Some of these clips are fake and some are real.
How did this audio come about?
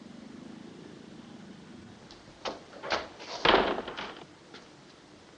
real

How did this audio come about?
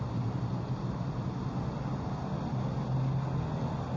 real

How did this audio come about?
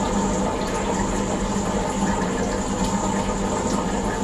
real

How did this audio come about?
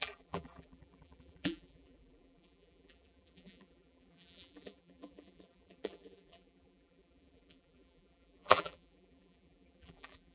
fake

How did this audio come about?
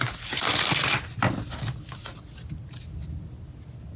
real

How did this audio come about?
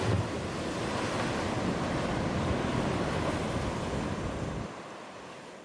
real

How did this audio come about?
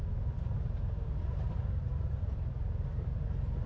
fake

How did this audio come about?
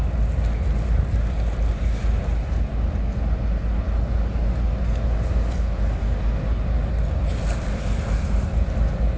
real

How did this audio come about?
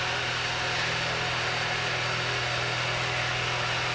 real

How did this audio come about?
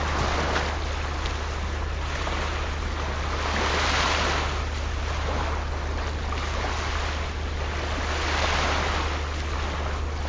real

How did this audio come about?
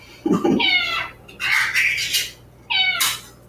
real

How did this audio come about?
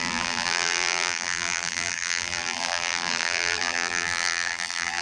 fake